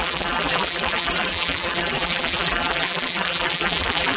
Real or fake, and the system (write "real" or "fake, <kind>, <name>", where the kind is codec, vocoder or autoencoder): fake, vocoder, BigVGAN v2